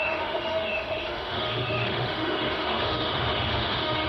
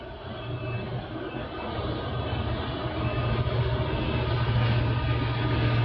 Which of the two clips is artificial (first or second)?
first